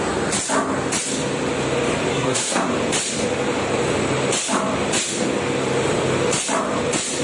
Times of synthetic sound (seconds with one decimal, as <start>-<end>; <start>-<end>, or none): 2.1-2.7